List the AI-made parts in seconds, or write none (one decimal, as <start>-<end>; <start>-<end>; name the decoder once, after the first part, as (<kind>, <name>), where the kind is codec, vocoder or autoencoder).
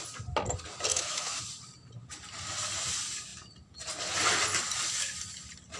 0.9-1.4 (autoencoder, DAC-VAE)